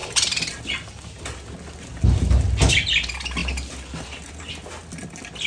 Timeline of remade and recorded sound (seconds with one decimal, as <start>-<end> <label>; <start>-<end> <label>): 0.0-5.5 recorded